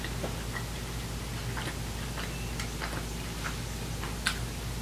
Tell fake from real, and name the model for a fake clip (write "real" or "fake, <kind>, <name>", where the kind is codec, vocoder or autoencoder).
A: real